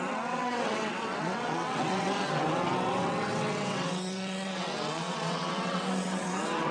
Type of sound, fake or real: fake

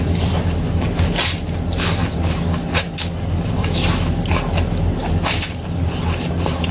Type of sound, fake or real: real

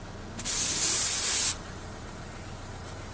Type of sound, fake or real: real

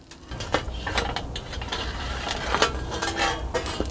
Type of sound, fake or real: real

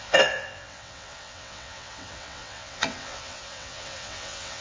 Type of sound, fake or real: fake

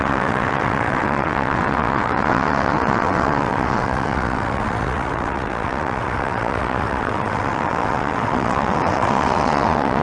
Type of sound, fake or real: fake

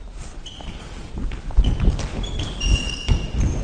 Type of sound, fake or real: real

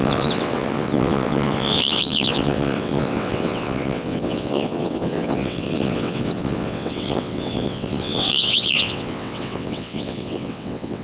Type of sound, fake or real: fake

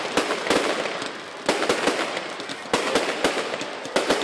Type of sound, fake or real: real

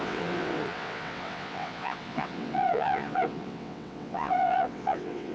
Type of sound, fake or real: fake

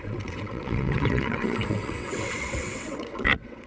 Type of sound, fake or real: fake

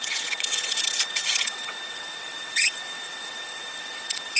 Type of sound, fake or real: fake